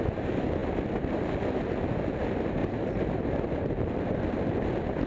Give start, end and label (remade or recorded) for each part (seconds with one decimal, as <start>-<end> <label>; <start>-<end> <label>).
0.0-2.6 recorded; 2.6-3.9 remade; 3.9-5.1 recorded